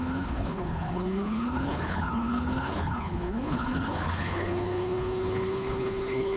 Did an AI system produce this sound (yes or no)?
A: yes